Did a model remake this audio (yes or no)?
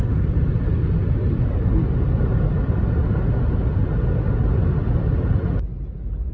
no